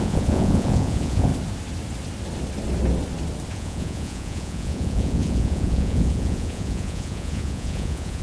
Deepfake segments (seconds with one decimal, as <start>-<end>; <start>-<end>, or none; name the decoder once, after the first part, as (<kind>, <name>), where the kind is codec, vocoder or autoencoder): 0.0-1.3 (vocoder, Vocos); 3.5-8.2